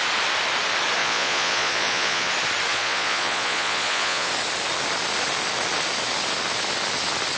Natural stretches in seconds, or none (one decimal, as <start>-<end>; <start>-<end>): 0.0-1.0; 2.3-2.7; 4.3-7.4